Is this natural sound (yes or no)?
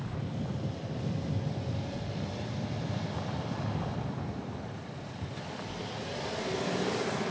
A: yes